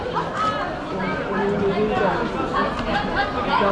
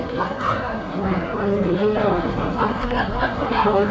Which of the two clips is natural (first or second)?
first